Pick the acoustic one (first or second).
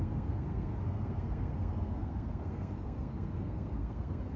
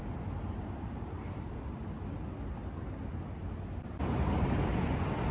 second